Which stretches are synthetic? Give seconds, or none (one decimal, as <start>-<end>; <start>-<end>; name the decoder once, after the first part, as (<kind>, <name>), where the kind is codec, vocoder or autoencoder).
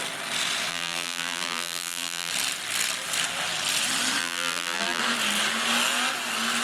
0.7-2.3 (vocoder, BigVGAN v2); 4.2-5.0